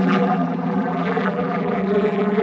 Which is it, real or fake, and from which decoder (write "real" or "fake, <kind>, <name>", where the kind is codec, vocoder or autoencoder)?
fake, vocoder, BigVGAN v2